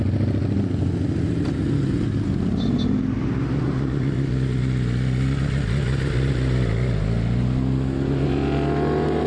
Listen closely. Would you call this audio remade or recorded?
recorded